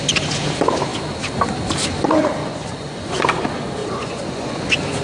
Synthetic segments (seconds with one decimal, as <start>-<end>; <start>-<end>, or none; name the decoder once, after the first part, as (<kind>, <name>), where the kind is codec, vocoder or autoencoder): 2.4-3.2 (vocoder, Vocos); 3.8-4.6